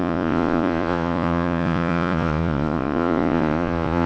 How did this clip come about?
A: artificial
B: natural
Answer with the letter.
A